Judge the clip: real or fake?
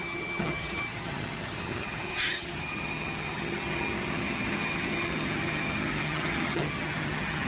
fake